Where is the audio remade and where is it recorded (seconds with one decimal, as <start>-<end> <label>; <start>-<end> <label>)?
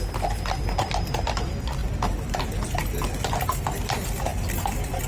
0.0-1.8 recorded; 1.8-2.4 remade; 2.4-5.1 recorded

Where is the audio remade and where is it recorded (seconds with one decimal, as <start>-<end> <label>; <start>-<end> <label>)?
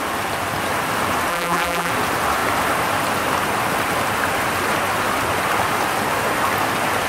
0.0-1.3 recorded; 1.3-1.9 remade; 1.9-7.1 recorded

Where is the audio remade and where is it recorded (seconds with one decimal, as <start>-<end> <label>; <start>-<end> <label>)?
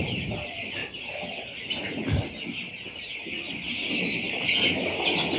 0.0-0.8 recorded; 0.8-2.7 remade; 2.7-3.1 recorded; 3.1-3.9 remade; 3.9-5.4 recorded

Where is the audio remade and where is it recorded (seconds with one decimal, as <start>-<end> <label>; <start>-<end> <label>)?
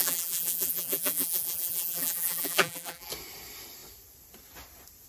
0.0-3.1 remade; 3.1-5.1 recorded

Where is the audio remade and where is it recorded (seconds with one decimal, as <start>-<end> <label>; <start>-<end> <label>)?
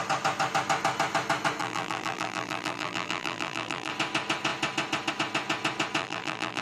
0.0-1.6 recorded; 1.6-3.9 remade; 3.9-6.0 recorded; 6.0-6.6 remade